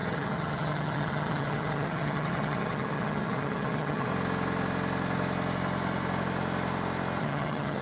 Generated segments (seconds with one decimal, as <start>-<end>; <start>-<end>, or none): 0.0-4.1; 7.2-7.8